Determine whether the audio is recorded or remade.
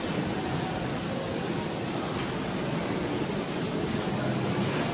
recorded